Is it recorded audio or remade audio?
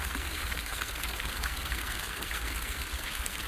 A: remade